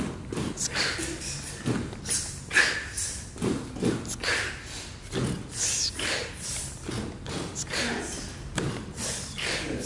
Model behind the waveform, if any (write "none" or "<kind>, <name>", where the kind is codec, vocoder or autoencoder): none